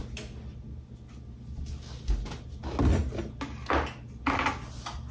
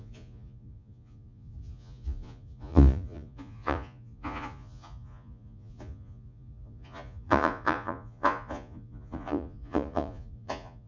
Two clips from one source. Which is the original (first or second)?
first